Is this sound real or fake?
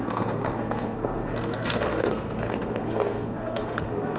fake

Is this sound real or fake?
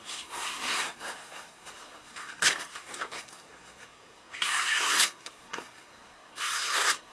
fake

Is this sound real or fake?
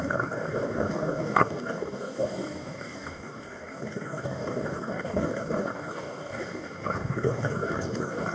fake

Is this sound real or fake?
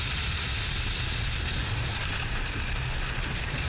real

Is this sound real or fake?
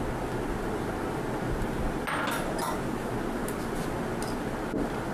real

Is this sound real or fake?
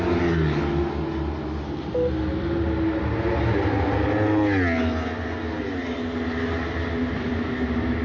real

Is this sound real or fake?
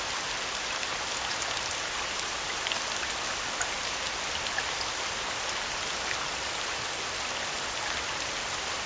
real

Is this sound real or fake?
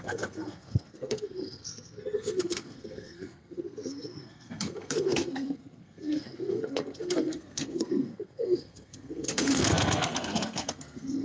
fake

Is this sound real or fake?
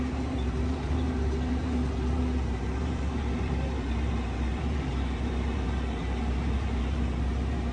fake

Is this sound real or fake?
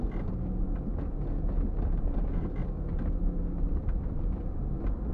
real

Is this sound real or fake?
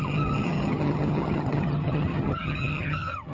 fake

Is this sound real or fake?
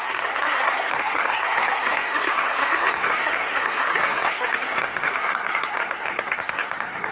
fake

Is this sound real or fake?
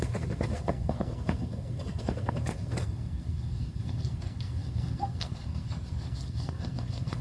fake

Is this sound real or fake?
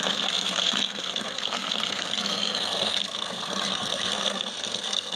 fake